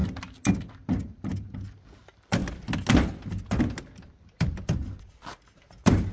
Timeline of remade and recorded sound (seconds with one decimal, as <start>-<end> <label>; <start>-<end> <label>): 0.0-6.1 recorded